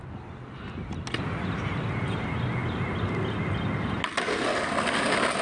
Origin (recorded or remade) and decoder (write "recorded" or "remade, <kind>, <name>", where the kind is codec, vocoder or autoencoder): recorded